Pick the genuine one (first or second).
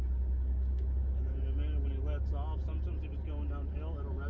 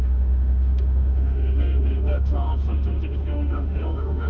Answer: first